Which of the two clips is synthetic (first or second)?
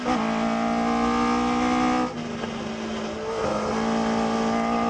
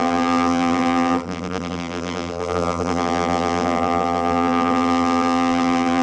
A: second